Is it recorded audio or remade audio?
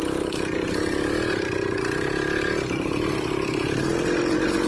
recorded